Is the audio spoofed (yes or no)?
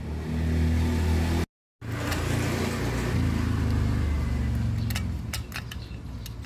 no